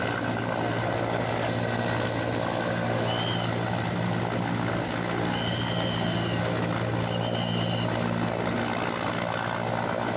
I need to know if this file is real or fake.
real